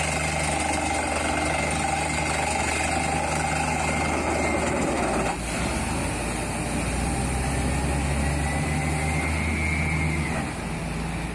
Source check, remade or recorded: recorded